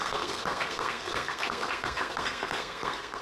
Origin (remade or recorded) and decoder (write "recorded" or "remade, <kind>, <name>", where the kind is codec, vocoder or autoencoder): remade, codec, SNAC